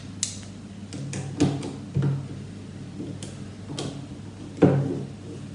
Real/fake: real